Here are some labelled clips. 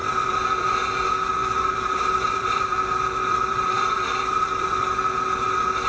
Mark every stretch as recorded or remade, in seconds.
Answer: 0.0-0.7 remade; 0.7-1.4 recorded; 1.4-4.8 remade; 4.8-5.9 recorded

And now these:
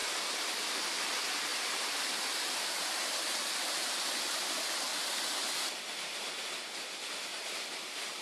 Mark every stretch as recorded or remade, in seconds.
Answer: 0.0-0.7 remade; 0.7-1.5 recorded; 1.5-2.8 remade; 2.8-7.3 recorded; 7.3-8.2 remade

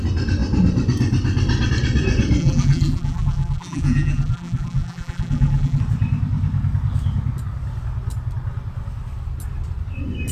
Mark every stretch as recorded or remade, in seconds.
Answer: 0.0-2.4 recorded; 2.4-5.8 remade; 5.8-10.3 recorded

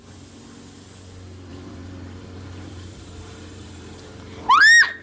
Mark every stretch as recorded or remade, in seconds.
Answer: 0.0-1.5 recorded; 1.5-4.5 remade; 4.5-5.0 recorded